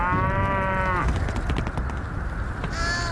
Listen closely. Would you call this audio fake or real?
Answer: real